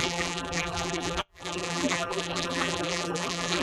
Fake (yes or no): yes